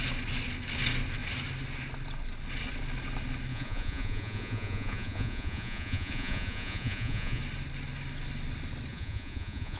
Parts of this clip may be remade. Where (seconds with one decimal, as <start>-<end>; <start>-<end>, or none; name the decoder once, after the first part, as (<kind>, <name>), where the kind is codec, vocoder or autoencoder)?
3.5-7.4 (vocoder, Vocos); 8.9-9.8